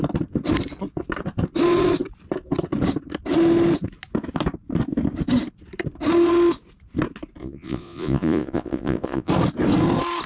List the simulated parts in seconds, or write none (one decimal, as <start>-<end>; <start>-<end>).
7.4-9.3